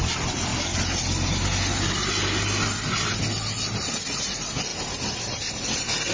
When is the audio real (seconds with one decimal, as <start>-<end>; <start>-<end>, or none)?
0.0-6.1